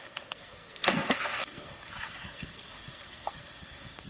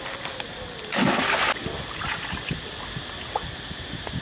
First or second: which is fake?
first